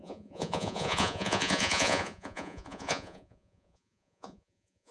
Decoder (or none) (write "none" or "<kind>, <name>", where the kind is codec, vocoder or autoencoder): vocoder, Vocos